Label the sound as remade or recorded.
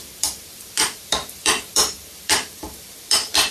remade